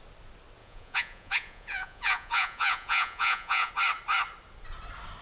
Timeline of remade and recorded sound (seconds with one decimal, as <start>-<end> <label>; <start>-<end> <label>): 0.0-0.6 recorded; 0.6-3.7 remade; 3.7-5.2 recorded